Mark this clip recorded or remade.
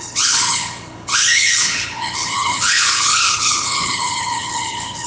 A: remade